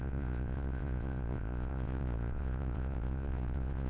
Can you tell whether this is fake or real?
fake